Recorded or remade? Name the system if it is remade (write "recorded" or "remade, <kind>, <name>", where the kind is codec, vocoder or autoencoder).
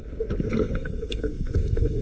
remade, codec, SNAC